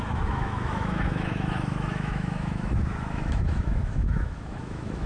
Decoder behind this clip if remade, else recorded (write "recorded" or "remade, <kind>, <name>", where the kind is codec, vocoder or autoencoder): remade, autoencoder, DAC-VAE